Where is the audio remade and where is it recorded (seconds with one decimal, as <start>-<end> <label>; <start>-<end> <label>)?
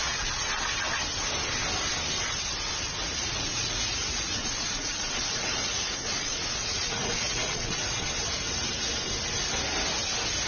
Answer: 0.0-0.6 remade; 0.6-3.0 recorded; 3.0-8.0 remade; 8.0-10.5 recorded